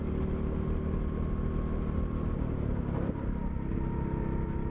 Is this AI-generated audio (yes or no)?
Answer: no